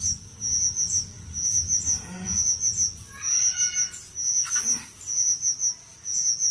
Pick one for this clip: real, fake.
real